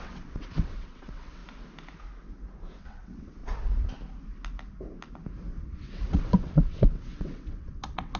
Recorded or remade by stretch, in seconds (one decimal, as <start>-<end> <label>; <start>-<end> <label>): 0.0-1.4 remade; 1.4-2.8 recorded; 2.8-3.4 remade; 3.4-5.5 recorded; 5.5-8.2 remade